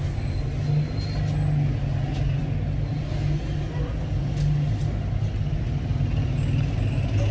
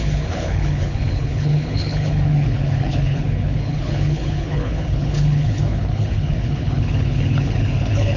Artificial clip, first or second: second